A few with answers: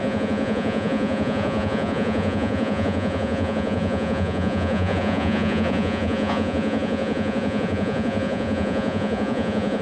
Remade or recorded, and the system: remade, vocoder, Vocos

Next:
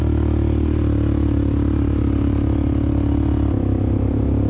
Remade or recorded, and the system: recorded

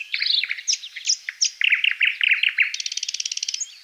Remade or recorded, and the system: recorded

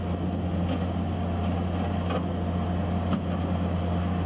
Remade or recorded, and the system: recorded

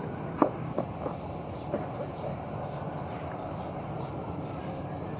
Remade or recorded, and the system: recorded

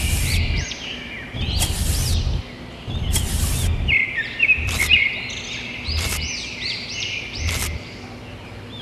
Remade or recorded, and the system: remade, vocoder, BigVGAN v2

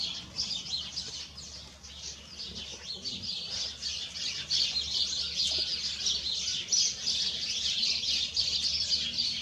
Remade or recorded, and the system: recorded